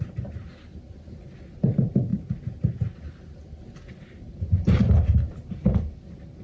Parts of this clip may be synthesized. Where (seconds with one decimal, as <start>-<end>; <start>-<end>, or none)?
none